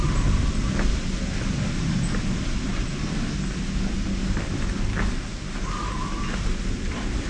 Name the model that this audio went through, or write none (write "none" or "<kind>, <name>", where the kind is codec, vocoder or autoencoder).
none